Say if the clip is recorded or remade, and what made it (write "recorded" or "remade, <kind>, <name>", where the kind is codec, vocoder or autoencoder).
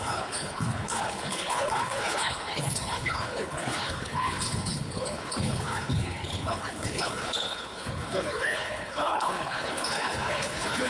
remade, codec, HILCodec